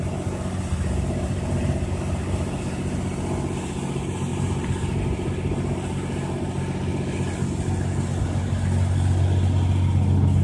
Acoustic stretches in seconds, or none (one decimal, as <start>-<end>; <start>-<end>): 0.0-10.4